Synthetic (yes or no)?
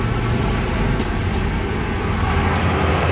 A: no